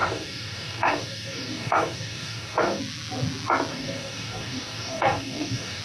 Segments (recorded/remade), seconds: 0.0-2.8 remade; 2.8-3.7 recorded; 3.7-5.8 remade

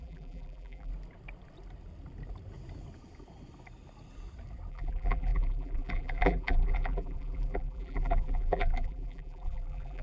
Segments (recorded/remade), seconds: 0.0-0.9 remade; 0.9-4.7 recorded; 4.7-10.0 remade

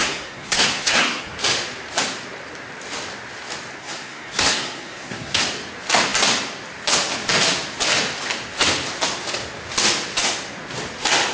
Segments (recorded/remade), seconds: 0.0-1.3 remade; 1.3-3.8 recorded; 3.8-5.4 remade; 5.4-11.3 recorded